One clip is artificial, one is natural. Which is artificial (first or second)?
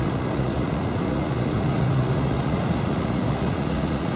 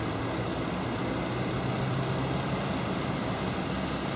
first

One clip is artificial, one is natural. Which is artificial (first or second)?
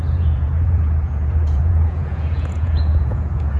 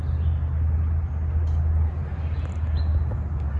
first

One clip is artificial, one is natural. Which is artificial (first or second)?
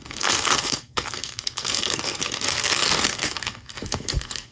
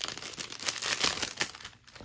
first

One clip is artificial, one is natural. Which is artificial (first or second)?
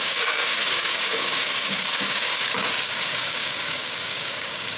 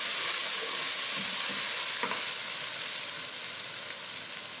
first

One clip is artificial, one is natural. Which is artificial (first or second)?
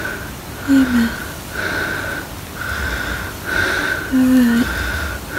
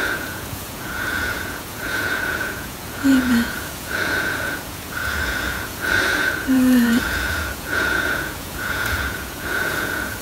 second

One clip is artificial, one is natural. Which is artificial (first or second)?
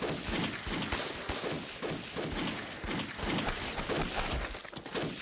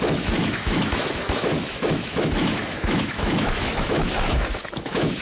second